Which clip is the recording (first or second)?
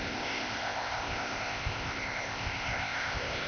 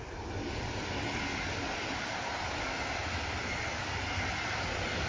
second